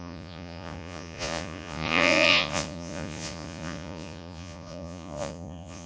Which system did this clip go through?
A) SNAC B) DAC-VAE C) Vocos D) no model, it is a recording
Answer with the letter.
C